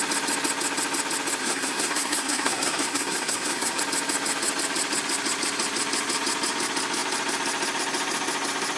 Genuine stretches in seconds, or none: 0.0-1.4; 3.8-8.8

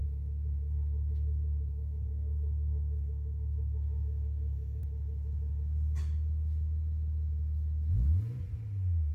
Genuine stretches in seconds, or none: 4.8-9.1

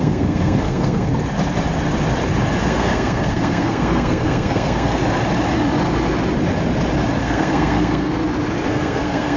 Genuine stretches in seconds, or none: 1.1-2.6; 5.0-7.2; 8.1-8.7

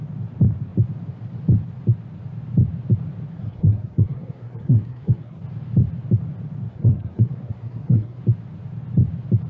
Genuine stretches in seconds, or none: 0.0-3.3; 5.4-6.7; 8.2-9.5